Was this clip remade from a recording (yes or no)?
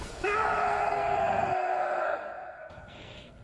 yes